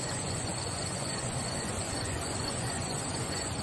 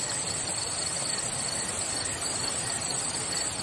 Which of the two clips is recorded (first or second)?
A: second